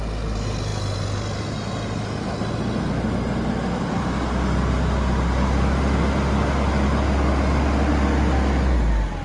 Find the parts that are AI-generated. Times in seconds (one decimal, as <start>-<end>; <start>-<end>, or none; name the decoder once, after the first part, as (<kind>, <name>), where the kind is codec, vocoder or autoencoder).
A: none